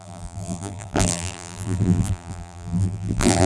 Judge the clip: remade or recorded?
remade